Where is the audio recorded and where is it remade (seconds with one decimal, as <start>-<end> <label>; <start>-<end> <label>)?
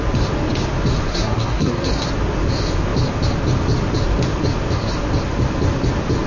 0.0-1.1 recorded; 1.1-1.9 remade; 1.9-6.3 recorded